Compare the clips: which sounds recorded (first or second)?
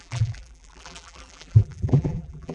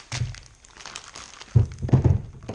second